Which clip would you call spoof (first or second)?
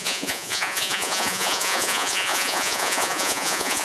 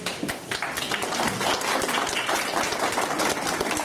first